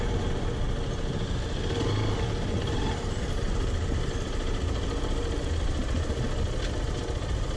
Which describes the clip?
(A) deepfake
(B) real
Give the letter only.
B